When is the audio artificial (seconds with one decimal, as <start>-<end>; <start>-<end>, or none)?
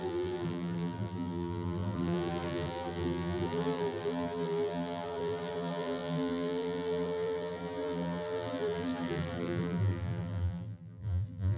0.0-11.6